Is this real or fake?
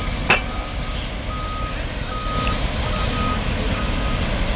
real